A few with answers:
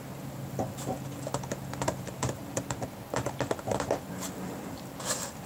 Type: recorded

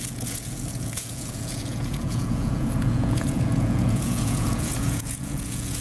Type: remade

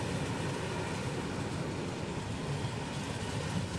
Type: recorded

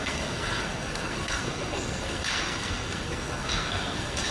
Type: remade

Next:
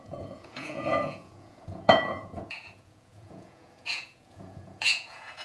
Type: remade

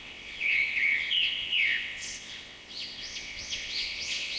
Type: remade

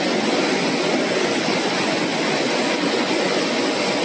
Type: remade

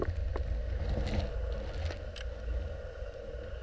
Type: recorded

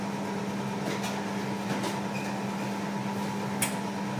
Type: recorded